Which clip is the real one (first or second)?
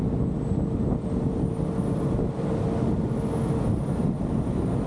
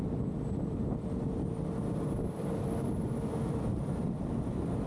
first